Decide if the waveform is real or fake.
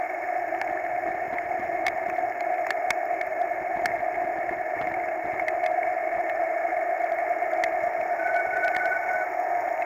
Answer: real